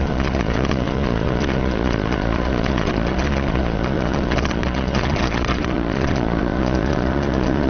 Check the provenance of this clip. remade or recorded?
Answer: remade